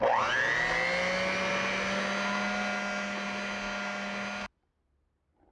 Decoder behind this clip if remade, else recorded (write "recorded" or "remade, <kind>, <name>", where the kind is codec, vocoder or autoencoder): recorded